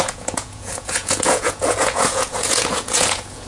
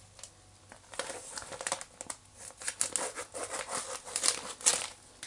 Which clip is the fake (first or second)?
first